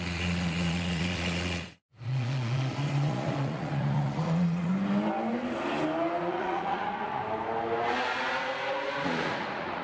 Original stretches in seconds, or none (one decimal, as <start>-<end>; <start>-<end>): 4.7-6.2; 7.2-7.9